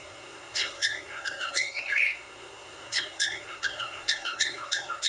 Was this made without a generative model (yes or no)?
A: no